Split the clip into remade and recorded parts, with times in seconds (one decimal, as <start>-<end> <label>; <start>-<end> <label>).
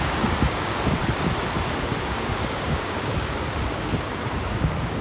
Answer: 0.0-1.0 remade; 1.0-1.8 recorded; 1.8-5.0 remade